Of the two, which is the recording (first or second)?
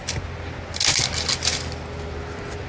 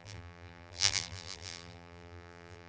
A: first